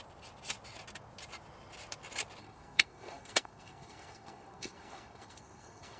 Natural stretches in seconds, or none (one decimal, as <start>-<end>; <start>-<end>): 0.0-2.4

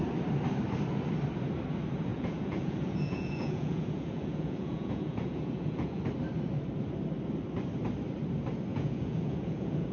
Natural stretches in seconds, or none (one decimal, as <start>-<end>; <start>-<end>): 0.0-2.1; 6.0-8.7

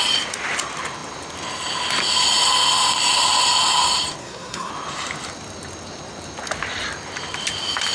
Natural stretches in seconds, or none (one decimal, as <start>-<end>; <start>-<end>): 0.0-4.2; 4.7-7.9

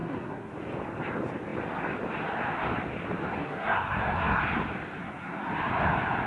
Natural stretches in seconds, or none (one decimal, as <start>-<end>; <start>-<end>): 0.5-3.4; 4.4-5.0; 5.5-6.3

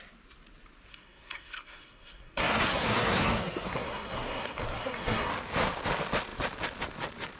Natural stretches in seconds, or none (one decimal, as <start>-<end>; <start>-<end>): 0.0-0.9; 5.3-7.4

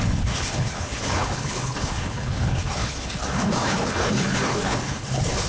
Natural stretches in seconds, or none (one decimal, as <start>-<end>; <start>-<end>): none

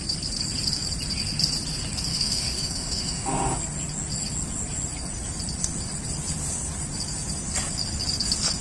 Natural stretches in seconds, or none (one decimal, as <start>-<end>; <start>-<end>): 0.0-2.1; 3.6-8.6